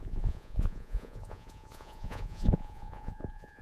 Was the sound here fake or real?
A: fake